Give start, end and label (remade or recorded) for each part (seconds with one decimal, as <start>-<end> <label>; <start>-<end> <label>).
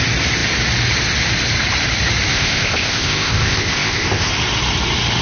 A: 0.0-2.3 recorded; 2.3-4.3 remade; 4.3-5.2 recorded